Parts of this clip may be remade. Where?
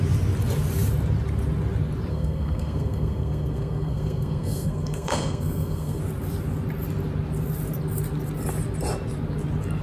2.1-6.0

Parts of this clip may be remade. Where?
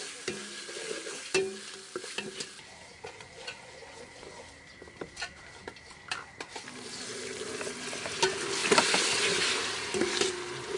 2.9-4.4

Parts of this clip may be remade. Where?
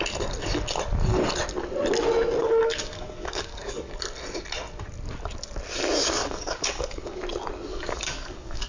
2.4-3.9; 6.2-7.2; 7.7-8.7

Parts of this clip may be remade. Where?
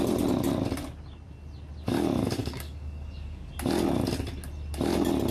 2.4-3.5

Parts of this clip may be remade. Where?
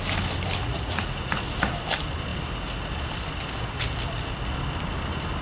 0.6-1.4